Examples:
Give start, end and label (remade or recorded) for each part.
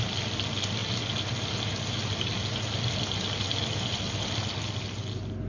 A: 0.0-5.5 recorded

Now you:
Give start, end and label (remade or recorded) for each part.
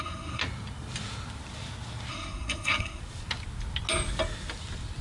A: 0.0-0.4 remade; 0.4-2.1 recorded; 2.1-3.0 remade; 3.0-5.0 recorded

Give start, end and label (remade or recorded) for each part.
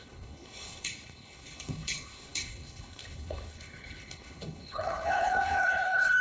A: 0.0-6.2 remade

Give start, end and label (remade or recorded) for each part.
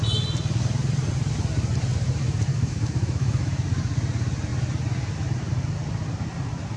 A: 0.0-2.5 recorded; 2.5-3.5 remade; 3.5-6.8 recorded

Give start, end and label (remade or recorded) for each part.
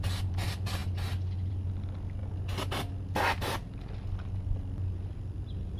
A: 0.0-5.8 recorded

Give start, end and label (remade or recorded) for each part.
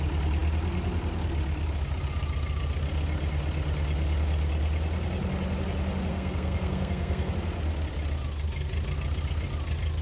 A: 0.0-6.1 recorded; 6.1-7.3 remade; 7.3-10.0 recorded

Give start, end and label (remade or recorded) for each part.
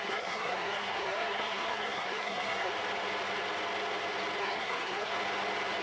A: 0.0-2.7 remade; 2.7-4.4 recorded; 4.4-5.1 remade; 5.1-5.8 recorded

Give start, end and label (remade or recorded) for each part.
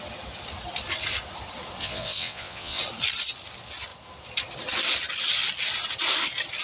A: 0.0-1.8 recorded; 1.8-2.8 remade; 2.8-6.6 recorded